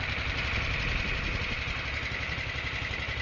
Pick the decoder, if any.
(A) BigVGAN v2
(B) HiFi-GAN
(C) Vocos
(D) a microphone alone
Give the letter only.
D